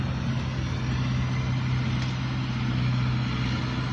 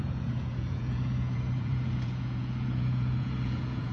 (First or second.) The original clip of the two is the first